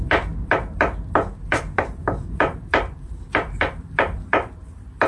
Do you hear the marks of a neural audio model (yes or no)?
yes